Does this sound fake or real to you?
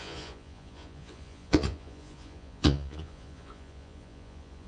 fake